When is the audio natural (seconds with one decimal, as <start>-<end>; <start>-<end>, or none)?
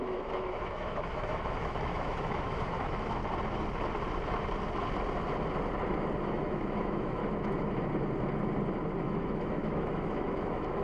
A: 3.2-6.2; 7.2-9.0